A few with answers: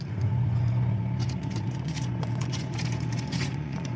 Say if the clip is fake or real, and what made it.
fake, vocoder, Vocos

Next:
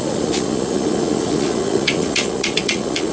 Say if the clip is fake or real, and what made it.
fake, vocoder, Vocos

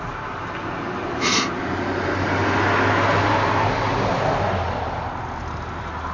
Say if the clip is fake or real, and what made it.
real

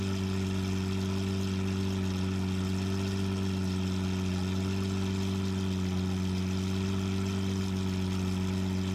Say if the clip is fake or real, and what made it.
real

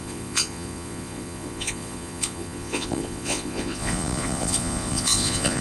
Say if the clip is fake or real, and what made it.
fake, vocoder, Vocos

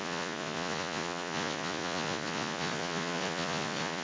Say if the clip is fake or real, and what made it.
fake, vocoder, Vocos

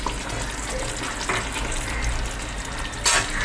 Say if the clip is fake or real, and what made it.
real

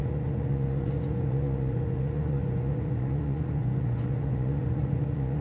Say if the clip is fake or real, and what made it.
fake, vocoder, Vocos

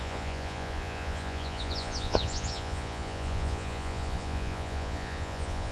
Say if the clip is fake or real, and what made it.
fake, vocoder, Vocos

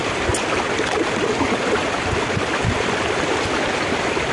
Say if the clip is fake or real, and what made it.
real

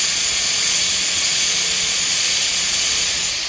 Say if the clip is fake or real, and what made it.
fake, vocoder, Vocos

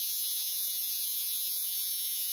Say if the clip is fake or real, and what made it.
fake, vocoder, Vocos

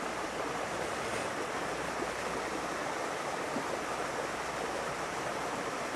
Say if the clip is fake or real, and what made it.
real